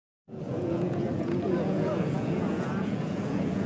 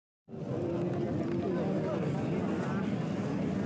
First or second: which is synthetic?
first